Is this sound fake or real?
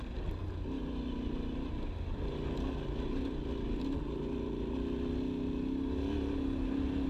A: real